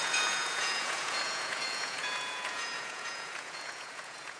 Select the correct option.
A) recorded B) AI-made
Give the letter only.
B